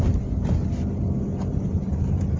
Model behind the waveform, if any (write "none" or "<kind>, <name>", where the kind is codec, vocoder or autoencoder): none